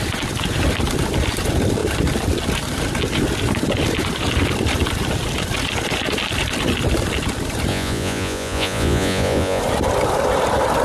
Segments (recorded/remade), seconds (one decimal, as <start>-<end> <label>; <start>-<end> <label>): 0.0-7.7 recorded; 7.7-9.6 remade; 9.6-10.8 recorded